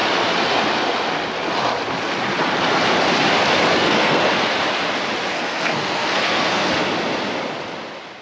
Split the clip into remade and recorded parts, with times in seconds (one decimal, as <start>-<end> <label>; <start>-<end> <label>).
0.0-3.7 recorded; 3.7-4.2 remade; 4.2-5.3 recorded; 5.3-6.7 remade; 6.7-8.2 recorded